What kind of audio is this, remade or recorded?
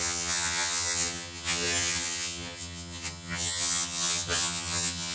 remade